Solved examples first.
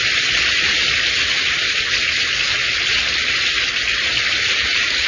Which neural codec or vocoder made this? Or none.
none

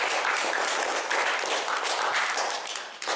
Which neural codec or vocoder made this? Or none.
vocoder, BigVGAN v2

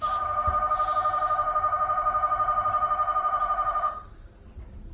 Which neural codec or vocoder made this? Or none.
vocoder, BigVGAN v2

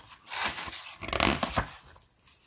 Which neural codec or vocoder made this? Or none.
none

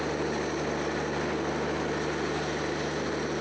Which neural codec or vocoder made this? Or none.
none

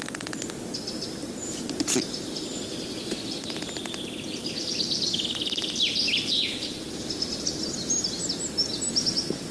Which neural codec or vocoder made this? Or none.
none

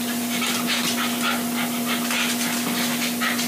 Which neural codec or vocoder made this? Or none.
none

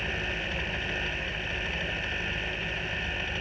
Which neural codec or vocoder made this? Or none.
none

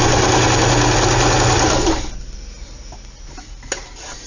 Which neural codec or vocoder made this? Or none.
none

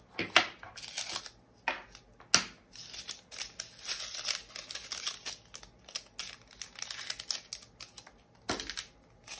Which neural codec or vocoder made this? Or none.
none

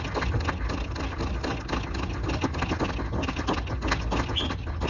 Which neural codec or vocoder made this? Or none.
none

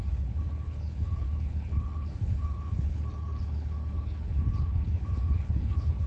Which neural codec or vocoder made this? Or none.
codec, HILCodec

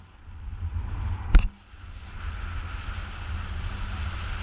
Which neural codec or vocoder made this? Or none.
none